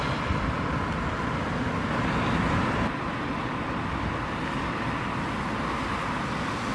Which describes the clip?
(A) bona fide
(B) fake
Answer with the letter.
A